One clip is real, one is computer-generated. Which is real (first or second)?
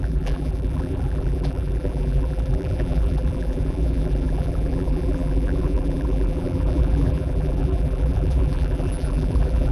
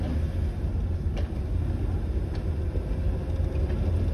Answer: second